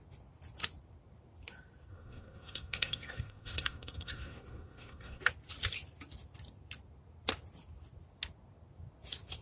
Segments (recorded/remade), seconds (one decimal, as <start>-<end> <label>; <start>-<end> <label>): 0.0-1.9 recorded; 1.9-5.2 remade; 5.2-9.4 recorded